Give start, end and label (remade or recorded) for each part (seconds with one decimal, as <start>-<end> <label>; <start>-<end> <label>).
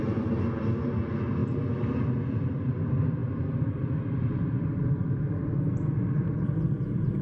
0.0-1.4 recorded; 1.4-2.0 remade; 2.0-7.2 recorded